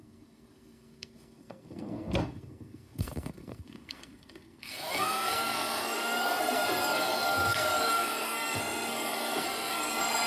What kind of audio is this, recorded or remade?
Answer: remade